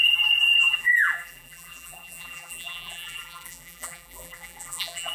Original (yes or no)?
no